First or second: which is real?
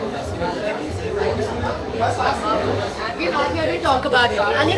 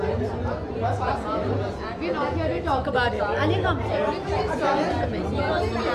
second